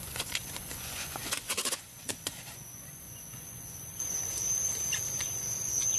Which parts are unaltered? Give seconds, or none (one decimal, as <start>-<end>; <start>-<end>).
4.4-5.1